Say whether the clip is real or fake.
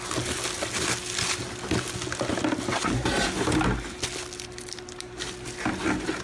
real